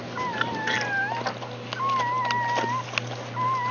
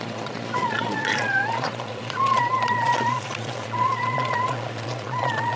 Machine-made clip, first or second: second